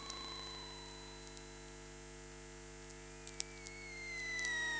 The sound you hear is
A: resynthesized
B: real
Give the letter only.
B